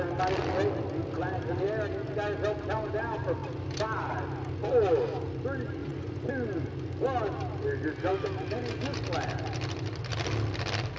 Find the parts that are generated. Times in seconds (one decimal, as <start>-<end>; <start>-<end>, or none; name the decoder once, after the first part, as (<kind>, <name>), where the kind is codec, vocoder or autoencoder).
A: 5.8-6.3 (vocoder, Vocos)